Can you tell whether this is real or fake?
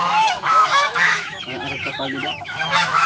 fake